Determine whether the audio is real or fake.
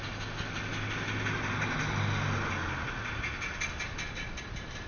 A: real